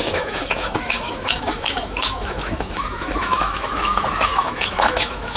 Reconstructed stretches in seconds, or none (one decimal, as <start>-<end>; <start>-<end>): 0.0-5.4